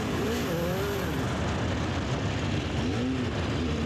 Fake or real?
real